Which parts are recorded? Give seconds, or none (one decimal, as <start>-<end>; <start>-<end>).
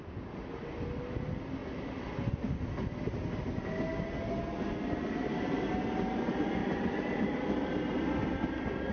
0.0-6.6; 8.3-8.9